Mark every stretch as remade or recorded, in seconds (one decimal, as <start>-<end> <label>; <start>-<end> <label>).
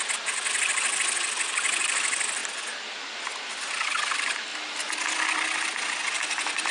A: 0.0-6.7 recorded